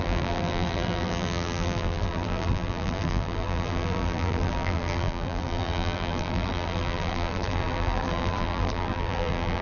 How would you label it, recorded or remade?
remade